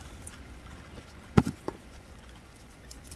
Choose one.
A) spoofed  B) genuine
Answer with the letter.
A